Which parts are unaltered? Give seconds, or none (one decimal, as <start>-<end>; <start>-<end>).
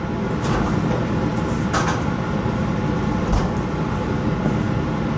0.0-5.2